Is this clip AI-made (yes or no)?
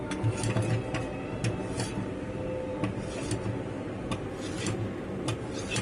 no